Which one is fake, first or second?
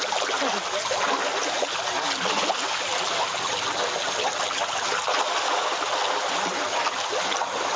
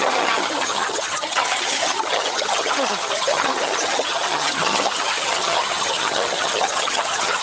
second